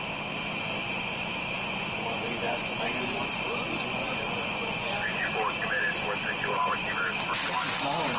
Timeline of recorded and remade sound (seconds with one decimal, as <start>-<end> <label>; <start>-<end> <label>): 0.0-0.8 recorded; 0.8-5.3 remade; 5.3-6.2 recorded; 6.2-6.9 remade; 6.9-8.2 recorded